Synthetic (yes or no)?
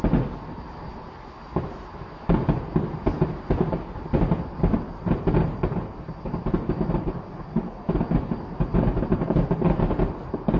no